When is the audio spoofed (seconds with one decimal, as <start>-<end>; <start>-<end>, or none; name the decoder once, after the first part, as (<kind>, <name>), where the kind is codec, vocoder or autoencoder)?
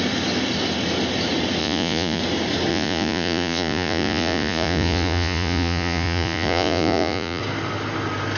1.6-2.2 (vocoder, Vocos); 2.7-7.4